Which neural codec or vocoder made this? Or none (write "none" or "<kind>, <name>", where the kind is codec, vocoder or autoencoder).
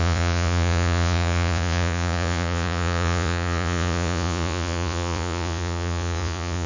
vocoder, Vocos